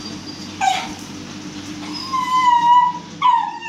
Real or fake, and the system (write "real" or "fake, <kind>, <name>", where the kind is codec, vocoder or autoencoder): real